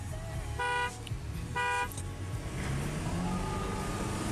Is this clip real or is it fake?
real